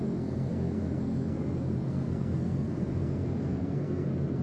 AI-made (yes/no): yes